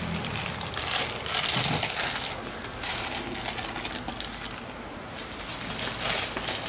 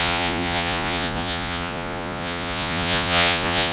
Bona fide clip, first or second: first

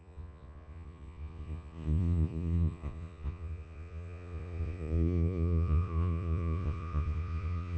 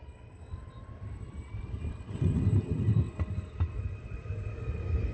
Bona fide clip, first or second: second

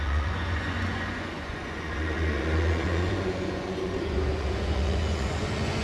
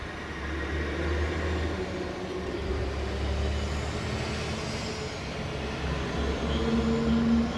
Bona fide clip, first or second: second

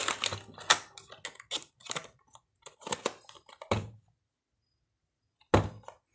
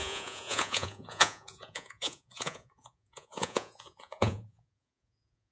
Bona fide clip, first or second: first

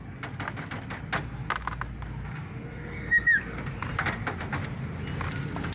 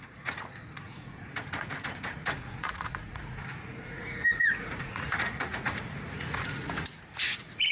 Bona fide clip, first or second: first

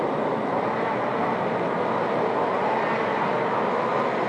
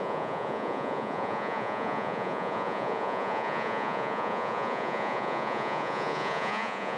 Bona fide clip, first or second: first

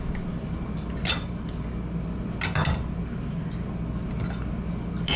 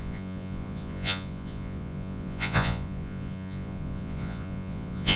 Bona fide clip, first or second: first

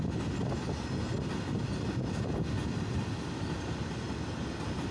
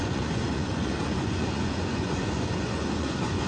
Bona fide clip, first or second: first